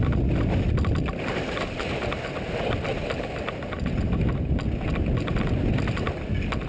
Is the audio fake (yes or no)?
no